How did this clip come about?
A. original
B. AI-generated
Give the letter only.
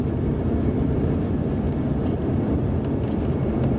A